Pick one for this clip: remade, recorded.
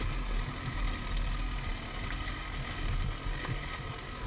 recorded